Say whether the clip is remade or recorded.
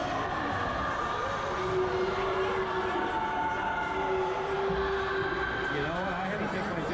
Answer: recorded